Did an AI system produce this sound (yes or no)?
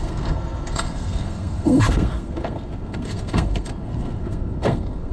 yes